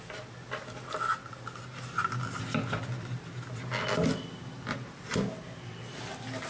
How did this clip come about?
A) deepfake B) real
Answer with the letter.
B